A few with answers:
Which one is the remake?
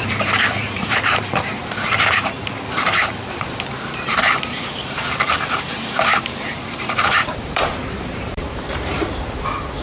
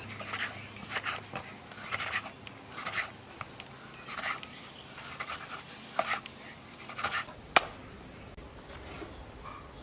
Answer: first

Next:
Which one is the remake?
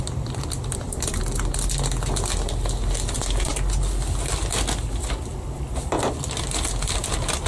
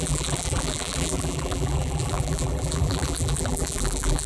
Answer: second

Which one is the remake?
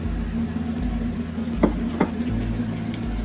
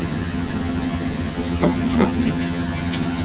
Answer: second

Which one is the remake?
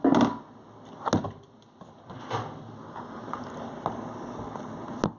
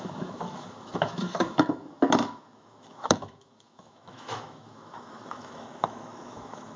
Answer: second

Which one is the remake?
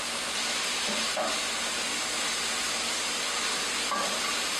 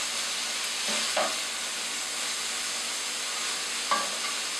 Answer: first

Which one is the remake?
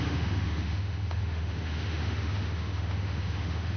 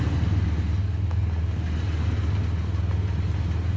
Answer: first